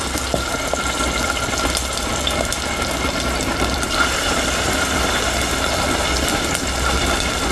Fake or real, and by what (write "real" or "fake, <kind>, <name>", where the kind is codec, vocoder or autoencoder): real